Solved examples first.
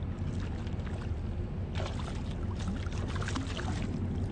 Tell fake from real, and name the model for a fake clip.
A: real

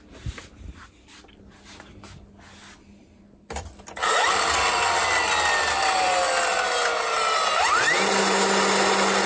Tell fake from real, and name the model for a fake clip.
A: real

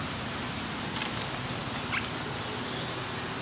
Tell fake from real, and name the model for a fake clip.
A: real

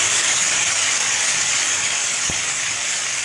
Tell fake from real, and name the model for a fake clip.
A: fake, codec, DAC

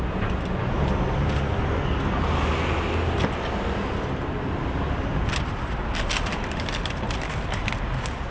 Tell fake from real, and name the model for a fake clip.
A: real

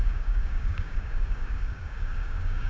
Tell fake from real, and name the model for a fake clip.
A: fake, codec, DAC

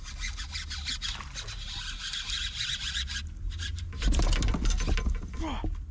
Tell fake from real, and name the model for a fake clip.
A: real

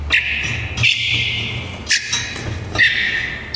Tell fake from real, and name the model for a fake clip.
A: real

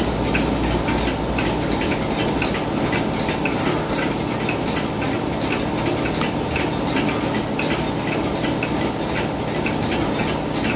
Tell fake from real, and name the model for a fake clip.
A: real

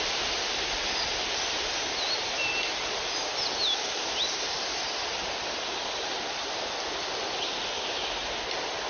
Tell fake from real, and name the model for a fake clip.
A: real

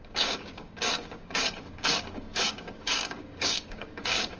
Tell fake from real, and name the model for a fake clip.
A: fake, codec, DAC